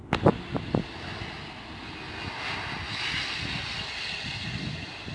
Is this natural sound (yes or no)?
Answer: yes